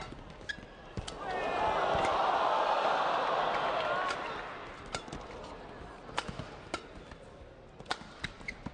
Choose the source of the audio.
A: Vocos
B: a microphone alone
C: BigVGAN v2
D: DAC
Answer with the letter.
B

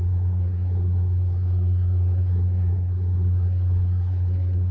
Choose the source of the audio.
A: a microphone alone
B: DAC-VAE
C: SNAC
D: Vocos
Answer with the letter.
C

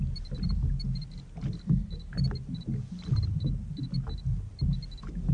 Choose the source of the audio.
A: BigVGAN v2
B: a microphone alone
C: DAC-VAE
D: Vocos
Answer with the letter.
B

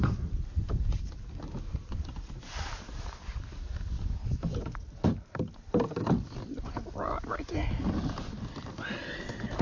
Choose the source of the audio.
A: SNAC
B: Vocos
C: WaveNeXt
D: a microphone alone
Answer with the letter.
D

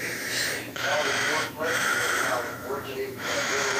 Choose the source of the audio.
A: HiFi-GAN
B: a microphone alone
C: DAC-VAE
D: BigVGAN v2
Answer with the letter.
C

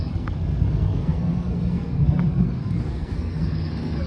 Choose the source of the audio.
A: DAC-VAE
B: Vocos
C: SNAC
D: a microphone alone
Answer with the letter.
C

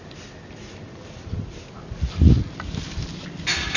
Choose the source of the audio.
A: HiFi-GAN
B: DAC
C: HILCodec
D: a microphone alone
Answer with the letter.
D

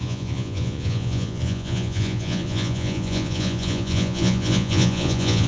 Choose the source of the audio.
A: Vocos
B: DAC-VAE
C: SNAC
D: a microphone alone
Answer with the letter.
A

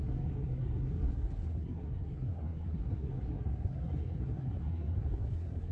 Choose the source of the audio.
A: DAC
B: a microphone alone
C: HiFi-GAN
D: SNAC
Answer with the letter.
D